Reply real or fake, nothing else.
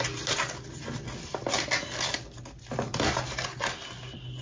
real